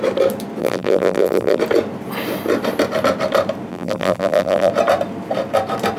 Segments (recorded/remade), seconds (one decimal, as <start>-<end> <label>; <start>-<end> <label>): 0.0-0.6 recorded; 0.6-1.6 remade; 1.6-3.7 recorded; 3.7-4.7 remade; 4.7-6.0 recorded